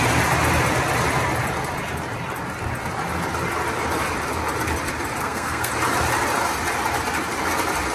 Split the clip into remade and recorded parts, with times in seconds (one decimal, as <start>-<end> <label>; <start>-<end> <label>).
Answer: 0.0-5.2 recorded; 5.2-5.7 remade; 5.7-7.9 recorded